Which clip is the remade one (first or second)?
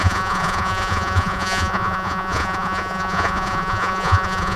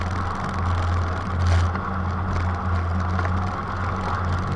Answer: first